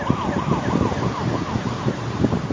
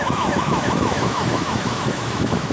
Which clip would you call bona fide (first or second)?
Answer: first